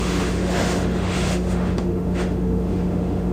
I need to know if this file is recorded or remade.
remade